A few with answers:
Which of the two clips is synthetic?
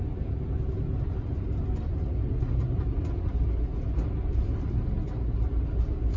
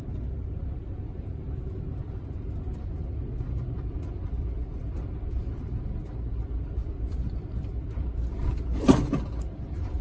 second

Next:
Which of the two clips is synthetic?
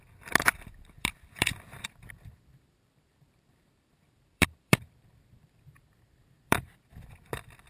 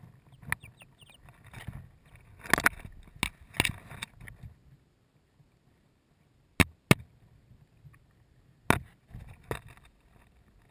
first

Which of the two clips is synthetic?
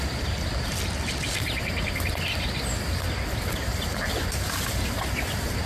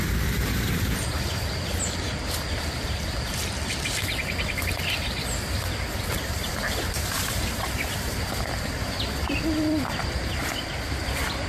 second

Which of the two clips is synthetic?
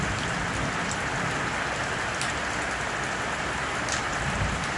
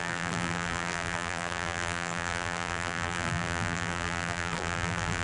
second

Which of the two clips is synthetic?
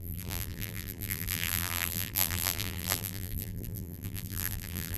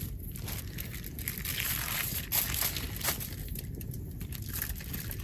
first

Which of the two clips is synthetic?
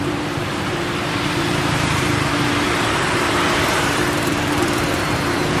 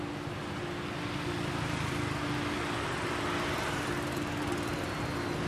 first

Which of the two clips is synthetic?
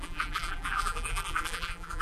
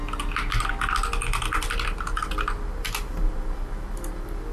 first